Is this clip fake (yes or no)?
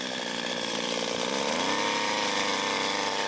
no